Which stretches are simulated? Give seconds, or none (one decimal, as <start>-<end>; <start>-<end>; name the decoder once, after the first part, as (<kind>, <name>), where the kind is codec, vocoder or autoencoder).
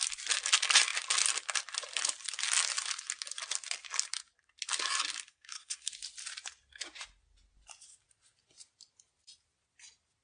5.3-5.9 (codec, SNAC)